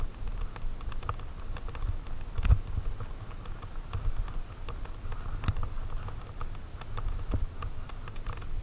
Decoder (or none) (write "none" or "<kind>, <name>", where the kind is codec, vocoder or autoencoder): none